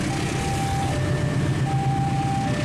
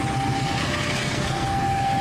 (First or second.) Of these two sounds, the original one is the first